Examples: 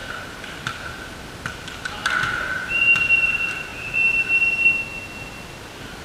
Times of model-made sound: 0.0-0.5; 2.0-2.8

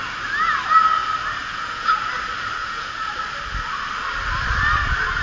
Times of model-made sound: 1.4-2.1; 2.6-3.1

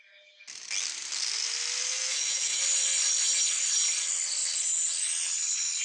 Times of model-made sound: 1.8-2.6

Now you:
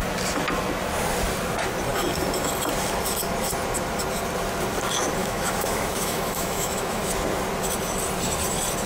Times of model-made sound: 5.2-7.1

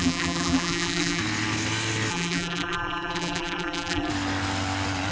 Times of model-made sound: 0.0-1.2; 2.1-4.1

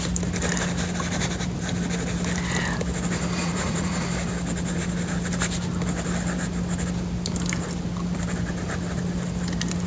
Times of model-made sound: 3.4-4.0

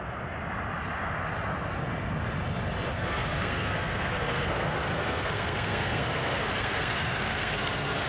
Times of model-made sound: 2.9-8.1